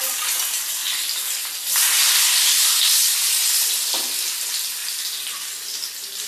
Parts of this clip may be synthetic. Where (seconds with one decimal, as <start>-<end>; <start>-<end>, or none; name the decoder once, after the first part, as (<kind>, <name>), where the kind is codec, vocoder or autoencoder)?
none